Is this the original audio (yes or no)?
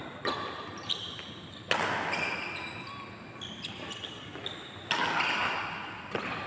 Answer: yes